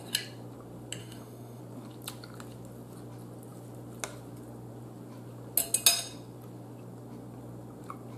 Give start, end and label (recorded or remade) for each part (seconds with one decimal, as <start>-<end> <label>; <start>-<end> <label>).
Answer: 0.0-1.0 recorded; 1.0-1.6 remade; 1.6-8.2 recorded